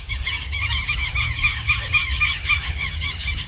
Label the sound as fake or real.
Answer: fake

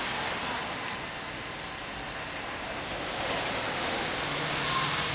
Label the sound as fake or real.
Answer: real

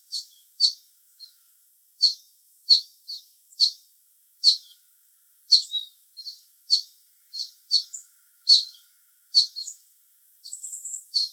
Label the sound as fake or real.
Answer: fake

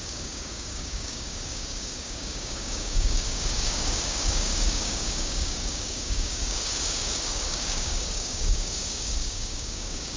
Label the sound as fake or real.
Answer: fake